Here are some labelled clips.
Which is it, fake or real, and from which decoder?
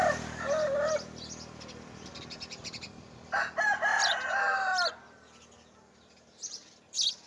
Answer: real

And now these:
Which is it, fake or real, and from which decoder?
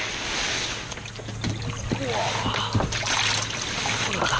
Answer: real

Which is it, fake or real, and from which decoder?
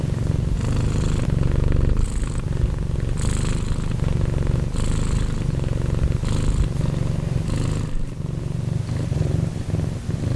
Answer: real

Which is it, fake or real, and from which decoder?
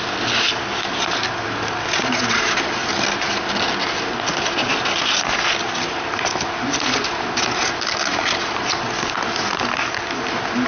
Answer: real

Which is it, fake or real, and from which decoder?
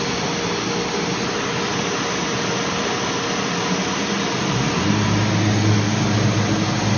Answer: real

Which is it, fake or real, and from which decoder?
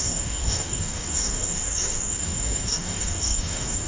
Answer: fake, codec, DAC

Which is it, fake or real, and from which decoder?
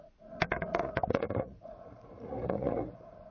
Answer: fake, vocoder, Vocos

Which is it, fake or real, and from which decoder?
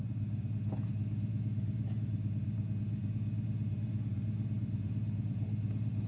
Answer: fake, vocoder, BigVGAN v2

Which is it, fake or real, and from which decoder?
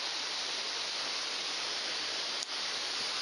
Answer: real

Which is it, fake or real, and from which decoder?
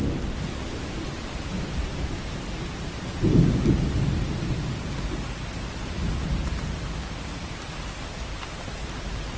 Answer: real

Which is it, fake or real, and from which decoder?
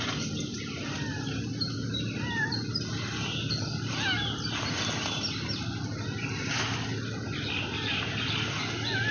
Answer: real